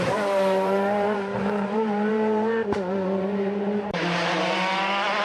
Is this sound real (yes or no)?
no